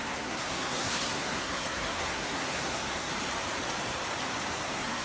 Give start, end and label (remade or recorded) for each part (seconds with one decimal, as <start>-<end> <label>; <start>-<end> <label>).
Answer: 0.0-3.1 remade; 3.1-4.5 recorded; 4.5-5.0 remade